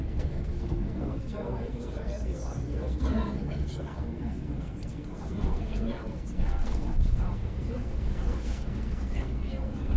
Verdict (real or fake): fake